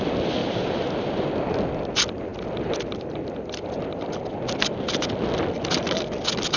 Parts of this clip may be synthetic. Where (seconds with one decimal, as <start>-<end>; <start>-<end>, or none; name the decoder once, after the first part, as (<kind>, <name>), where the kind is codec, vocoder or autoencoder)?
0.4-1.3 (vocoder, BigVGAN v2)